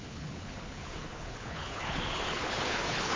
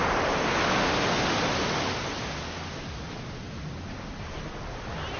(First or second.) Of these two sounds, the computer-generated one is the first